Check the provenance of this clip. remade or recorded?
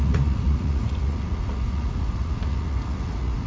remade